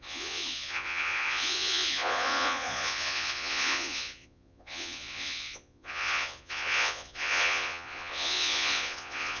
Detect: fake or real fake